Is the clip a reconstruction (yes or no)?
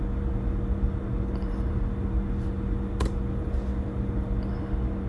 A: no